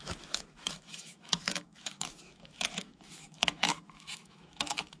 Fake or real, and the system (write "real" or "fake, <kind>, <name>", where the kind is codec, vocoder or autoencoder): fake, autoencoder, DAC-VAE